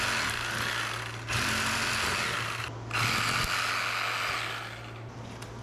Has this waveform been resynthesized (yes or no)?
no